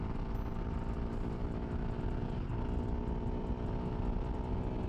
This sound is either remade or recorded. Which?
recorded